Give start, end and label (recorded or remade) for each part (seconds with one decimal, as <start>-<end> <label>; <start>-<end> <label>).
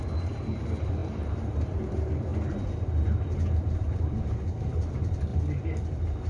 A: 0.0-2.3 remade; 2.3-3.5 recorded; 3.5-5.3 remade; 5.3-6.3 recorded